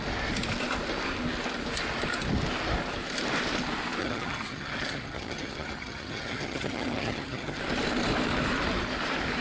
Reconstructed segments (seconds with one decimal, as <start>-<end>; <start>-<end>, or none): 4.0-7.6